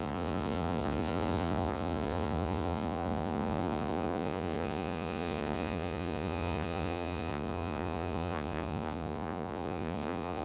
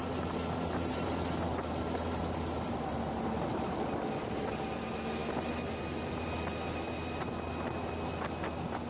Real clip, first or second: second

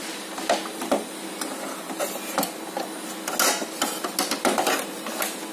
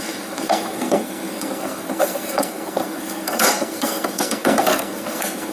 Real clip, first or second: first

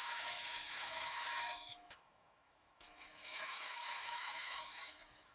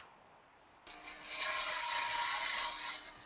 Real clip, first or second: second